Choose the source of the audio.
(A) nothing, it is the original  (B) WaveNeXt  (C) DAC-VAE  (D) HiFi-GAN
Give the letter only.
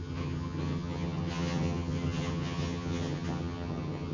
D